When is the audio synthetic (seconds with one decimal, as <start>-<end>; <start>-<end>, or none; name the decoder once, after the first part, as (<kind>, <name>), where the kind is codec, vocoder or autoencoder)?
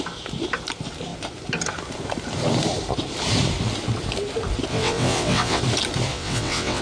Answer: 4.7-5.6 (vocoder, WaveNeXt); 6.1-6.8